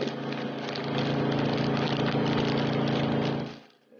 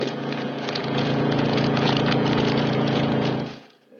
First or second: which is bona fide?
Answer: first